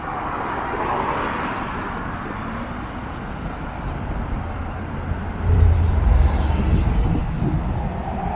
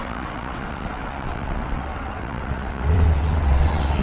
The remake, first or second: second